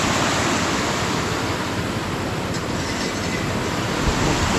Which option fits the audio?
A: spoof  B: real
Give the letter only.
B